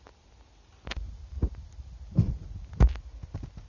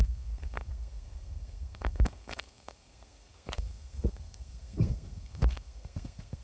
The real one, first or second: first